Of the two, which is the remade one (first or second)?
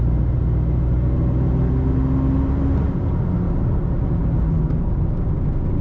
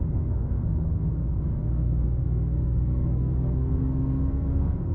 second